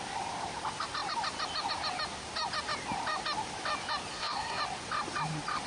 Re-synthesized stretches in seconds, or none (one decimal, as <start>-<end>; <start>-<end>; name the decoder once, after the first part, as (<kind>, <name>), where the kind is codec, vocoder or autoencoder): 4.1-4.6 (codec, SNAC)